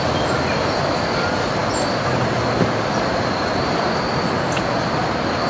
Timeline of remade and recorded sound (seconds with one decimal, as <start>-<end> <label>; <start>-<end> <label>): 0.0-5.5 recorded